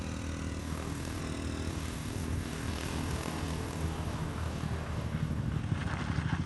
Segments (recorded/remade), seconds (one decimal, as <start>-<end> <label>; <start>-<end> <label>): 0.0-0.6 recorded; 0.6-1.2 remade; 1.2-1.7 recorded; 1.7-5.6 remade; 5.6-6.5 recorded